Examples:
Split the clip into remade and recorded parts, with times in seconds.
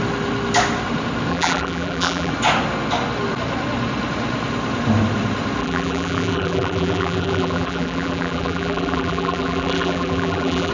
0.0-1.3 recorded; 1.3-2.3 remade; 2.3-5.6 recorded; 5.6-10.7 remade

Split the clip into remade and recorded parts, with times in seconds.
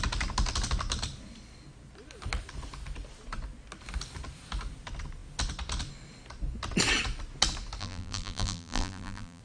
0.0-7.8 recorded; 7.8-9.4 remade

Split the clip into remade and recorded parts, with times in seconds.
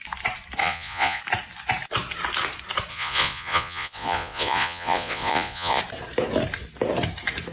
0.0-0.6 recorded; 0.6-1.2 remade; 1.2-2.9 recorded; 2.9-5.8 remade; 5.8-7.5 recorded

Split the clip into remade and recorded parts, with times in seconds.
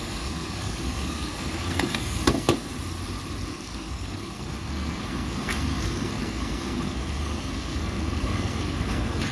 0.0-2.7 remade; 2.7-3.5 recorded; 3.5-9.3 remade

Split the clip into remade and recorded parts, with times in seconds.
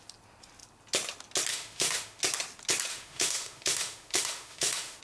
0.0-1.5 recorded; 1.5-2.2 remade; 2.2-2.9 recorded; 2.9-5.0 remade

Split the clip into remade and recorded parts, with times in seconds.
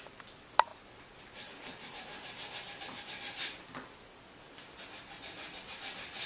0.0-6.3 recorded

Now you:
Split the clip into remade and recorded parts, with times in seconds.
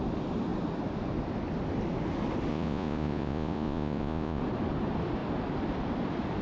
0.0-2.5 recorded; 2.5-4.4 remade; 4.4-6.4 recorded